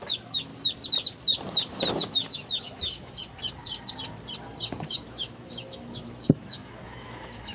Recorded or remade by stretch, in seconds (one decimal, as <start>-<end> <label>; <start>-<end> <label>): 0.0-0.5 remade; 0.5-1.9 recorded; 1.9-3.2 remade; 3.2-4.9 recorded; 4.9-7.5 remade